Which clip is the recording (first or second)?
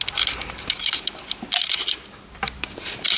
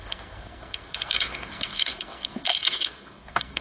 first